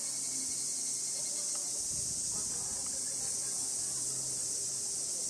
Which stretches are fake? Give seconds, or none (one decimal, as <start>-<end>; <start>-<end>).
none